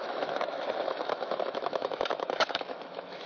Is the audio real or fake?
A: fake